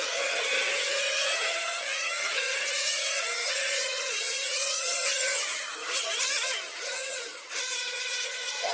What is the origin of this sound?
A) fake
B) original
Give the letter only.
A